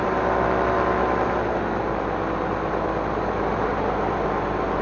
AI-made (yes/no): no